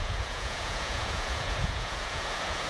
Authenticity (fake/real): fake